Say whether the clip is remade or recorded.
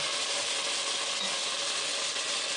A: recorded